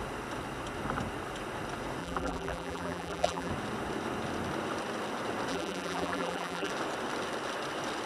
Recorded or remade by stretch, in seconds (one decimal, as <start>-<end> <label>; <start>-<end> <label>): 0.0-2.0 recorded; 2.0-3.5 remade; 3.5-5.5 recorded; 5.5-6.7 remade; 6.7-8.1 recorded